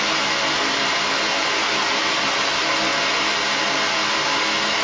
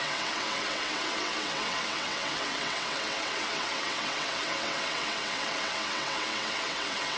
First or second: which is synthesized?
second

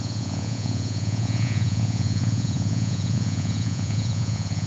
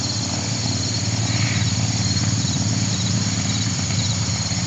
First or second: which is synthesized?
first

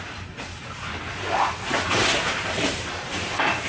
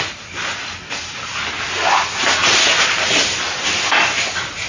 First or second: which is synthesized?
first